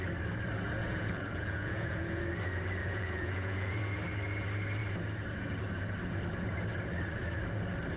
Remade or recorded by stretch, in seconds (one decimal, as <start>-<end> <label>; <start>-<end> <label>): 0.0-0.8 recorded; 0.8-2.2 remade; 2.2-2.8 recorded; 2.8-3.8 remade; 3.8-8.0 recorded